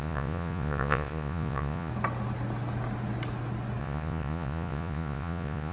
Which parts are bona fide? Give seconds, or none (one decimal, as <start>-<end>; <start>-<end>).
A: 1.9-3.8